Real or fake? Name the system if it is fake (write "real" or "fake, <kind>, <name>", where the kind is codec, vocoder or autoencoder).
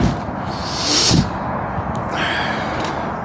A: real